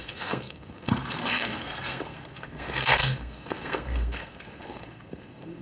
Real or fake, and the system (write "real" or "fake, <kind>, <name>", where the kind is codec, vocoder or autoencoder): fake, codec, SNAC